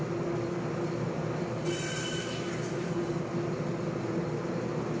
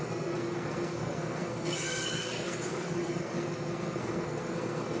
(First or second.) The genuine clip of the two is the first